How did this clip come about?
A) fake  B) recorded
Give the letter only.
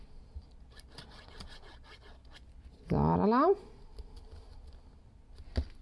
B